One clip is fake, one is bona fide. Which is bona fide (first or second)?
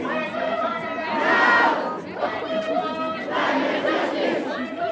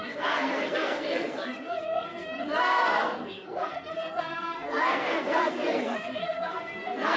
first